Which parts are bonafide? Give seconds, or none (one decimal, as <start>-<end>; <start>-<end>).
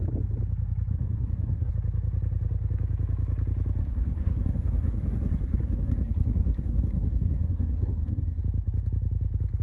0.0-0.9; 1.7-3.8; 8.4-9.6